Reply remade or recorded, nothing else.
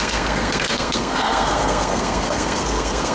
remade